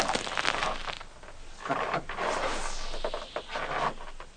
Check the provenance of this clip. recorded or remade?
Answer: recorded